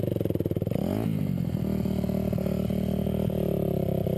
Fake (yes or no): no